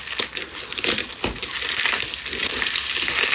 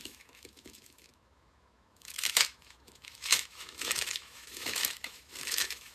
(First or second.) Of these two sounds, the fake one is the second